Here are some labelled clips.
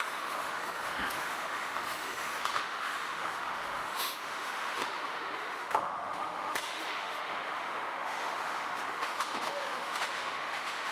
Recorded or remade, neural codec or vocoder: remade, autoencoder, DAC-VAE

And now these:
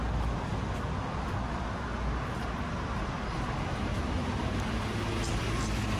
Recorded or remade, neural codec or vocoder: recorded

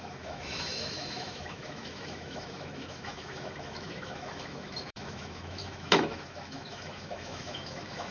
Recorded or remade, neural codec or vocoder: remade, autoencoder, DAC-VAE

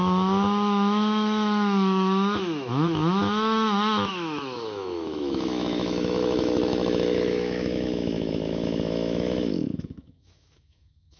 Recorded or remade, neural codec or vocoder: remade, autoencoder, DAC-VAE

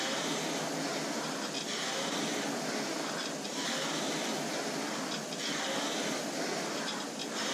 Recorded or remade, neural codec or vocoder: recorded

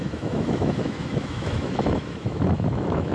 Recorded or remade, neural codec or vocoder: remade, autoencoder, DAC-VAE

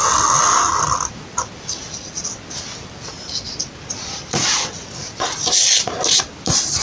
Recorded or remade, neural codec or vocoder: recorded